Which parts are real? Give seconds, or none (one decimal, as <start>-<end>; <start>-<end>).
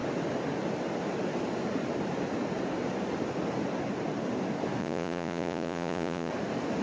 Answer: 0.0-4.8; 6.3-6.8